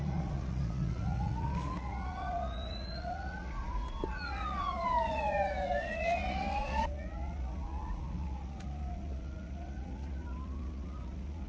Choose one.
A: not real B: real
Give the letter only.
A